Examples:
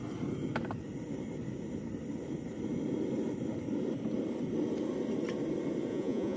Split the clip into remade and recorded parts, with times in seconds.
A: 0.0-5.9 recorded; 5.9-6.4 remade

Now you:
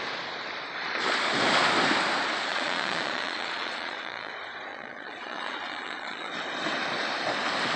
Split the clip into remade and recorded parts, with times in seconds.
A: 0.0-2.5 recorded; 2.5-4.3 remade; 4.3-4.7 recorded; 4.7-6.3 remade; 6.3-7.8 recorded

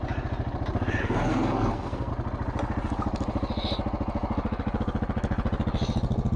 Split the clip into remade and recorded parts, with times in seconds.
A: 0.0-1.0 recorded; 1.0-2.1 remade; 2.1-6.4 recorded

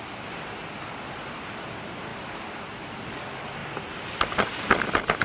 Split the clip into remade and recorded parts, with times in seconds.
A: 0.0-3.6 remade; 3.6-4.5 recorded; 4.5-5.2 remade

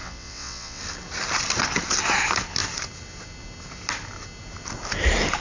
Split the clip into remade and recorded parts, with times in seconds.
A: 0.0-0.8 remade; 0.8-5.4 recorded

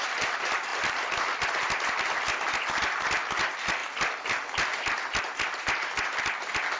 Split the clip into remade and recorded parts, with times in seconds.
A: 0.0-6.8 recorded

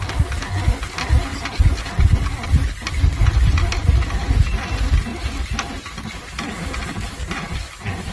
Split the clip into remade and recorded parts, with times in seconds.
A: 0.0-8.1 recorded

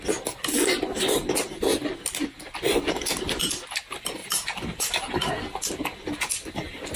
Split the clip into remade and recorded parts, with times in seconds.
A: 0.0-1.7 recorded; 1.7-2.6 remade; 2.6-4.2 recorded; 4.2-5.3 remade; 5.3-7.0 recorded